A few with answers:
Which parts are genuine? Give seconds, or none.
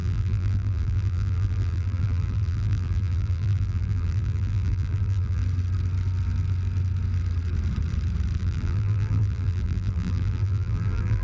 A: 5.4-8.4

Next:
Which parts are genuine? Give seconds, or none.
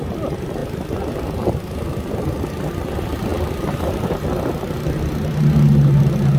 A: 0.0-6.4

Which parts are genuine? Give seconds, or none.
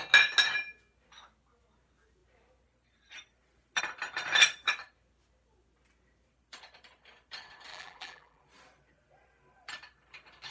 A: 0.0-7.7; 8.4-10.5